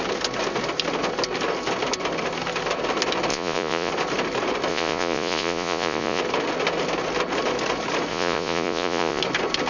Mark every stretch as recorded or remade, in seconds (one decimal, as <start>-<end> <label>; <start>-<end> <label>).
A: 0.0-3.3 recorded; 3.3-3.9 remade; 3.9-4.7 recorded; 4.7-6.2 remade; 6.2-8.1 recorded; 8.1-9.2 remade; 9.2-9.7 recorded